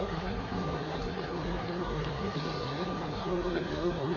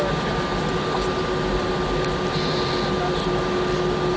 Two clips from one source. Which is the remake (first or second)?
first